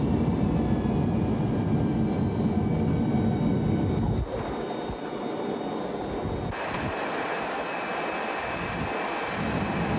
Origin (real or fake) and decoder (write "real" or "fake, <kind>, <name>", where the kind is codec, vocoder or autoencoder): real